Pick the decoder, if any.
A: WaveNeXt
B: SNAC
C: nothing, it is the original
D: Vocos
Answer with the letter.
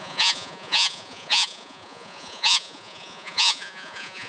D